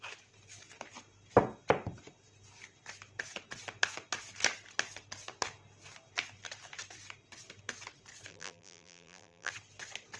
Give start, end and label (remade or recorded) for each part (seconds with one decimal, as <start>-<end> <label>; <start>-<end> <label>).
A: 0.0-8.3 recorded; 8.3-9.5 remade; 9.5-10.2 recorded